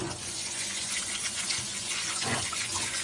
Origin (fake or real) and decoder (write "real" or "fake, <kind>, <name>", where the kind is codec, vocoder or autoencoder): fake, vocoder, Vocos